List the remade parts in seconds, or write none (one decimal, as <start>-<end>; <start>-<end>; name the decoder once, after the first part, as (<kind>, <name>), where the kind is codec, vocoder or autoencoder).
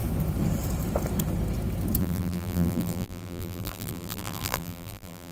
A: 2.0-5.3 (vocoder, BigVGAN v2)